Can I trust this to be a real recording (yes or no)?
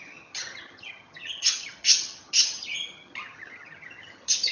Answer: no